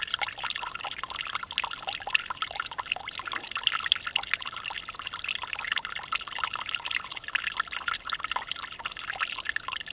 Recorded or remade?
recorded